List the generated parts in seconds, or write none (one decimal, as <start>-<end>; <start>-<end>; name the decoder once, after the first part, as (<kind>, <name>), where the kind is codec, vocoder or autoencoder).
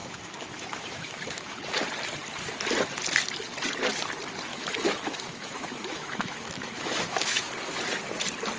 0.0-1.7 (autoencoder, DAC-VAE); 4.5-7.5